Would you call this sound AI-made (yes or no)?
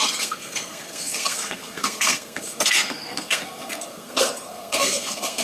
yes